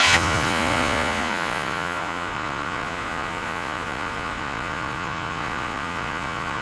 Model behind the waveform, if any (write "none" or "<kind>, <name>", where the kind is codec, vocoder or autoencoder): vocoder, Vocos